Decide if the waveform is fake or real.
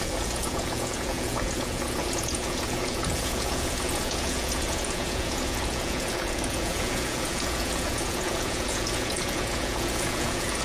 fake